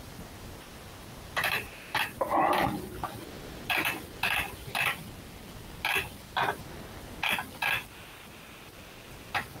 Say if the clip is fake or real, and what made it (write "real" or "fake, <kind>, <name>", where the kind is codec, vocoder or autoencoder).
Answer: real